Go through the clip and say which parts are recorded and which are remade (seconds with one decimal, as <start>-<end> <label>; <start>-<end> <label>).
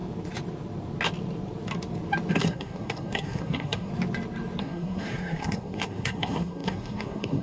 0.0-2.3 recorded; 2.3-3.9 remade; 3.9-4.6 recorded; 4.6-7.4 remade